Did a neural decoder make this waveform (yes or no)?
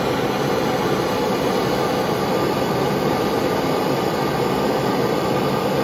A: no